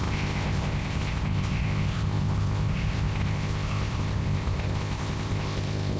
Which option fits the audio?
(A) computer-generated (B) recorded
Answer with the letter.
A